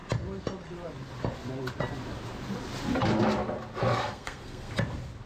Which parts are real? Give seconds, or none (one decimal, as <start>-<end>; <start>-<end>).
0.0-3.9; 4.7-5.3